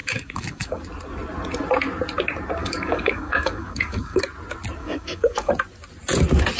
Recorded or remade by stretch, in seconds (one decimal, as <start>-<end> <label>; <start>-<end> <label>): 0.0-0.8 remade; 0.8-2.6 recorded; 2.6-4.2 remade; 4.2-4.8 recorded; 4.8-5.5 remade; 5.5-6.6 recorded